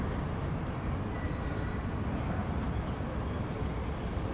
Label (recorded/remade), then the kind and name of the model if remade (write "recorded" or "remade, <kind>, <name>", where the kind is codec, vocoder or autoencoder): recorded